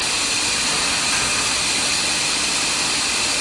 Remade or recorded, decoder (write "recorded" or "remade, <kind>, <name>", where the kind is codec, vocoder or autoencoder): recorded